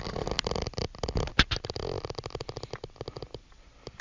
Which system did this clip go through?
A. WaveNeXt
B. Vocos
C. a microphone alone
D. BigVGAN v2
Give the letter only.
C